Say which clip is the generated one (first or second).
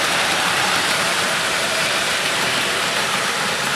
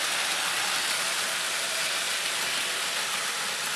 first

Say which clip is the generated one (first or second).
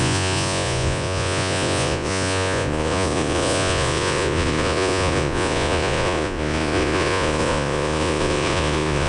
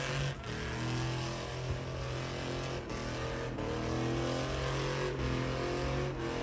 first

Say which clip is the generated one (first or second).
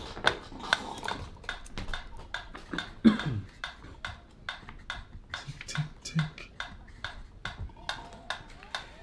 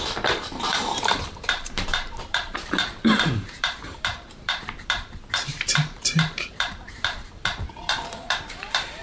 second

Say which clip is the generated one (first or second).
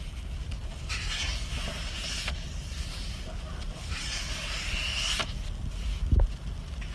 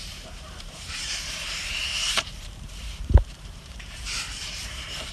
second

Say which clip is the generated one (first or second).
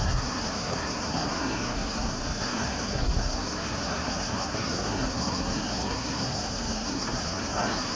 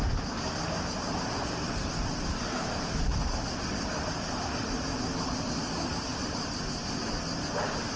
first